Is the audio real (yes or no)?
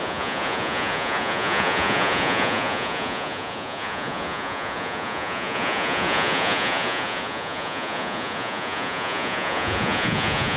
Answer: no